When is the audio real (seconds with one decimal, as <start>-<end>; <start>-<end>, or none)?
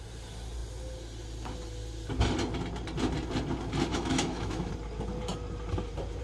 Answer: 0.0-3.9; 4.7-6.2